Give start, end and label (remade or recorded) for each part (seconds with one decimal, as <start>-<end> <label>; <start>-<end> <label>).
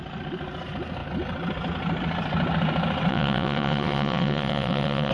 0.0-3.1 recorded; 3.1-5.1 remade